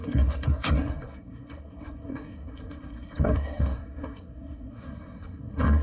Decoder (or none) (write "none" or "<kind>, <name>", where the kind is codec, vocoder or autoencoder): codec, SNAC